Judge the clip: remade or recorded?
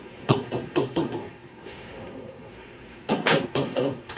remade